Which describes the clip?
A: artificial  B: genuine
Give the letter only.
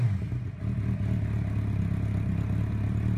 B